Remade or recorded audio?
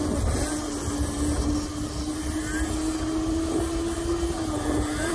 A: recorded